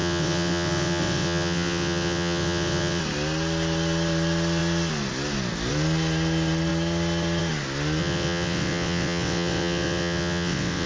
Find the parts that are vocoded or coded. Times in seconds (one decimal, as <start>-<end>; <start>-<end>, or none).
0.0-3.0; 8.0-10.9